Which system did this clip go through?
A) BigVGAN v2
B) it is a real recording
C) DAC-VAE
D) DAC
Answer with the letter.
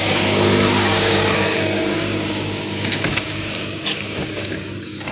D